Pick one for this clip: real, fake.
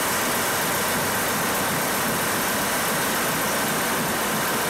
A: real